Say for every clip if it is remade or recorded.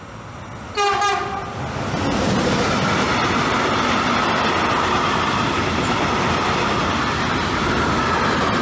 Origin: recorded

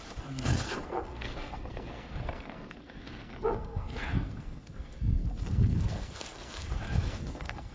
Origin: remade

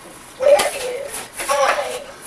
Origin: remade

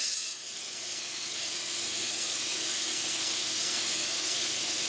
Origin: remade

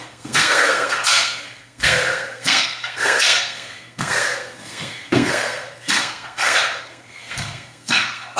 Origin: remade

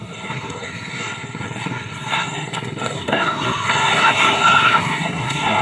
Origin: remade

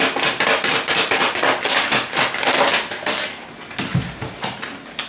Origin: recorded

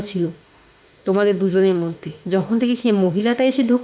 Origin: remade